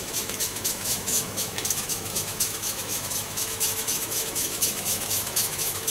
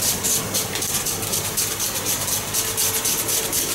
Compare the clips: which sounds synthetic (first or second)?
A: first